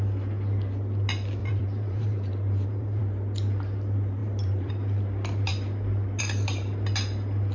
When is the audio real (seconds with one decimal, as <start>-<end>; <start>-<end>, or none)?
0.0-1.4; 3.0-4.2; 4.7-7.5